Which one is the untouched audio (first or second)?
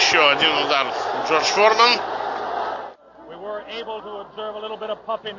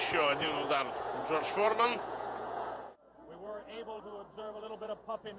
first